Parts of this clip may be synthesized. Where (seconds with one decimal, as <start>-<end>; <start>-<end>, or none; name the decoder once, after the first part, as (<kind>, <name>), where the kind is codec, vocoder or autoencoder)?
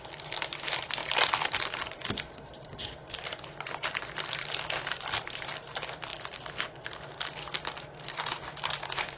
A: none